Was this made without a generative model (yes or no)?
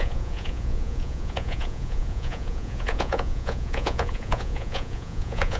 no